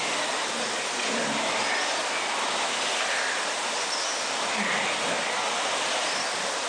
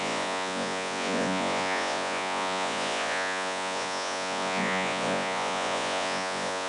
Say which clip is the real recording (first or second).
first